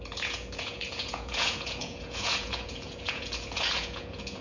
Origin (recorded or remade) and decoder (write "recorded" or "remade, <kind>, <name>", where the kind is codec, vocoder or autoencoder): remade, vocoder, Vocos